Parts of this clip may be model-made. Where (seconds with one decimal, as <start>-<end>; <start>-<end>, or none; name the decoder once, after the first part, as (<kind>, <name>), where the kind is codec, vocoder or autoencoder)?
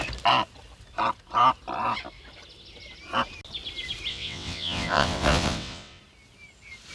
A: 4.1-6.0 (vocoder, WaveNeXt)